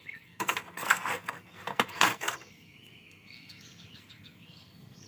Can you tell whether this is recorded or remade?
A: remade